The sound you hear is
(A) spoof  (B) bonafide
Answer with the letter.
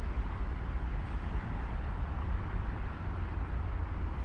B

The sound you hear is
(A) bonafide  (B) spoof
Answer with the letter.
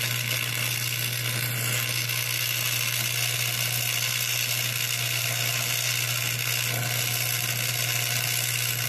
A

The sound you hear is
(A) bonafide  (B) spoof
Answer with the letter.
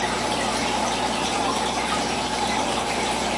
B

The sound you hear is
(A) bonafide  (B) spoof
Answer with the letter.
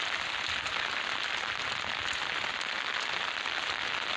A